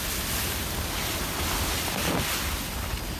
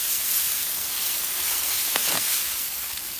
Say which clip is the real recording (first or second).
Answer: first